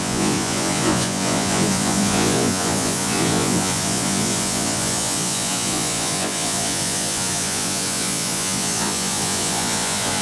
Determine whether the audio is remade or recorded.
remade